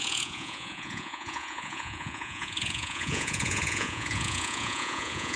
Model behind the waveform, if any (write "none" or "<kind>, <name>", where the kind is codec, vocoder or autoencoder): vocoder, Vocos